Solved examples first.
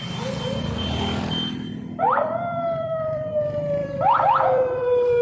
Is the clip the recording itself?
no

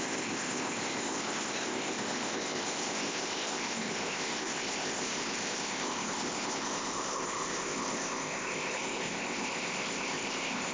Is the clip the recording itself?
no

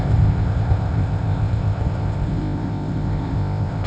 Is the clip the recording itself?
no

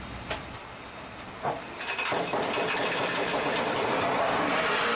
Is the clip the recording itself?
yes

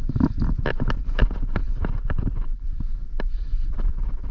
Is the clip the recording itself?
yes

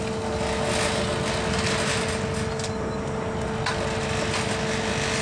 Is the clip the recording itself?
yes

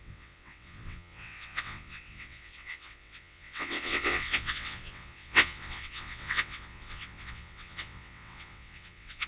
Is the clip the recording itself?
no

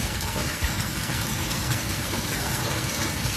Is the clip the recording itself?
no